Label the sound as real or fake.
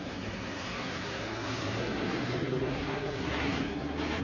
fake